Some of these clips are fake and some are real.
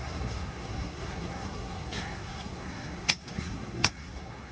fake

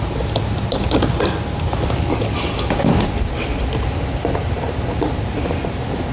real